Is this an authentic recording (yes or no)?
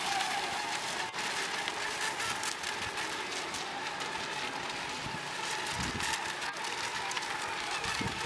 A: yes